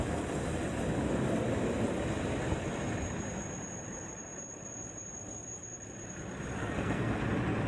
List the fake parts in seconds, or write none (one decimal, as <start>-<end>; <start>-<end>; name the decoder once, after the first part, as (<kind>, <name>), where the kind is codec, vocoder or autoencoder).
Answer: 6.6-7.2 (codec, SNAC)